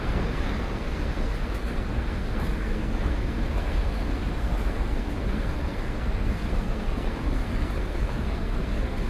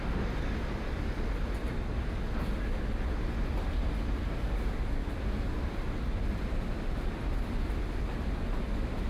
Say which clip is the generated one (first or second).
first